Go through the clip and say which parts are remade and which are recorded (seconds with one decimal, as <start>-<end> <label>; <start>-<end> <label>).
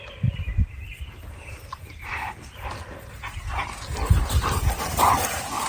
0.0-5.7 recorded